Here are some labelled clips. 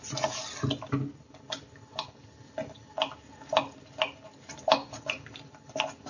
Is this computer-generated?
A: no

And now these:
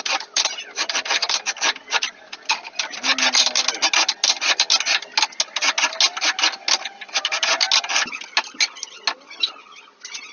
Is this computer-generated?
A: no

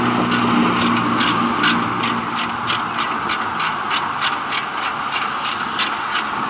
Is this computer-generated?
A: no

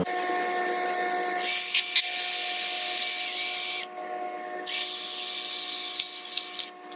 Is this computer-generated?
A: no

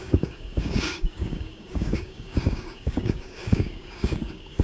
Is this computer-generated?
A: yes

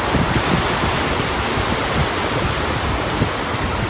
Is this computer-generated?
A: no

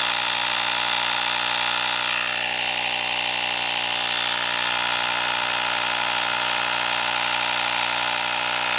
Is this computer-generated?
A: no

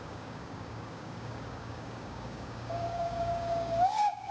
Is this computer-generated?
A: yes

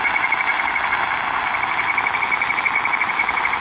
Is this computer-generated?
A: no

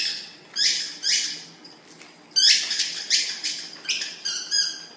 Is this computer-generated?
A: no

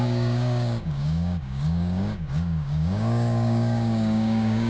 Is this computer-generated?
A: yes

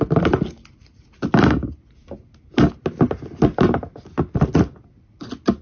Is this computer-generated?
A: no